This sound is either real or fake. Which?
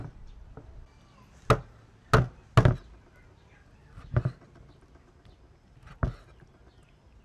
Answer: real